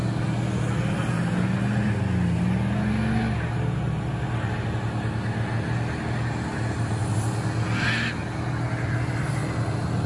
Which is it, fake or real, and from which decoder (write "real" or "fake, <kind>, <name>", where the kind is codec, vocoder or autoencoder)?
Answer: real